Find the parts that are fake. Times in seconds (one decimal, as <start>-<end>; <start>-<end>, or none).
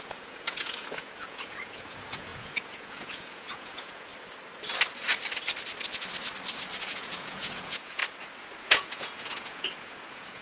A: 0.0-4.1; 6.8-8.0; 8.6-10.4